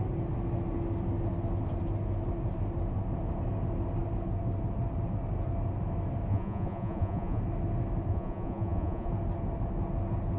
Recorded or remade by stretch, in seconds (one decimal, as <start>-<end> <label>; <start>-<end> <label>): 0.0-6.3 recorded; 6.3-7.4 remade; 7.4-8.1 recorded; 8.1-9.1 remade; 9.1-10.4 recorded